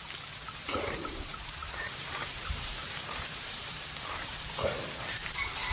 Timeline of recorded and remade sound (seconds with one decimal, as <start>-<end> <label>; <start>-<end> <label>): 0.0-1.6 recorded; 1.6-4.0 remade; 4.0-5.7 recorded